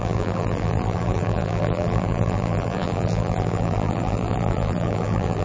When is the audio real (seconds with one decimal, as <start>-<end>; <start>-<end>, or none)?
none